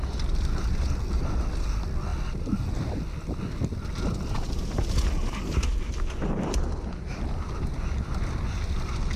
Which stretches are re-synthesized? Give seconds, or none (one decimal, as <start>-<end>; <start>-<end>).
none